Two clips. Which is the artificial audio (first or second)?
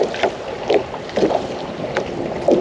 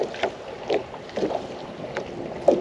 first